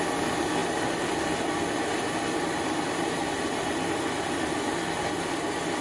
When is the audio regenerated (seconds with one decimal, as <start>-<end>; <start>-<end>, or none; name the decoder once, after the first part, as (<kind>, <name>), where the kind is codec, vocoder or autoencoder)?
none